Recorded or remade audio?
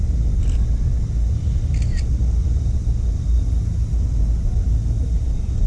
recorded